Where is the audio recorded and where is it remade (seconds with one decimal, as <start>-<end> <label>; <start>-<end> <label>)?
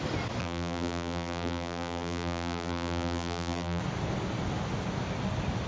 0.0-0.4 recorded; 0.4-3.8 remade; 3.8-5.7 recorded